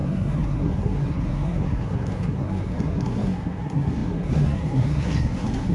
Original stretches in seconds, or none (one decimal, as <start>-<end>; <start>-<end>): none